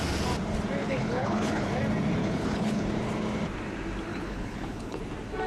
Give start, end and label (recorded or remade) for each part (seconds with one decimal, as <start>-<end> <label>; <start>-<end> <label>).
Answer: 0.0-0.8 recorded; 0.8-1.7 remade; 1.7-2.2 recorded; 2.2-2.9 remade; 2.9-4.1 recorded; 4.1-5.0 remade; 5.0-5.5 recorded